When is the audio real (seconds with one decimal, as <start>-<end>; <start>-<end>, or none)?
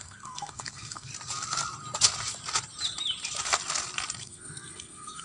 1.1-4.2